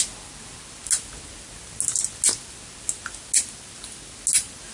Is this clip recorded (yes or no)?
yes